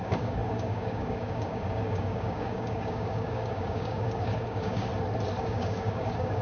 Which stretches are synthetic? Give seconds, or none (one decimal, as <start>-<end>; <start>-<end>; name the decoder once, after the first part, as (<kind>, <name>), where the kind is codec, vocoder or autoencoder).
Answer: 0.0-4.9 (codec, DAC); 5.4-6.4